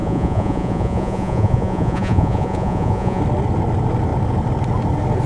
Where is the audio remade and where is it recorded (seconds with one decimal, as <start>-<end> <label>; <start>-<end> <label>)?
0.0-3.2 remade; 3.2-5.3 recorded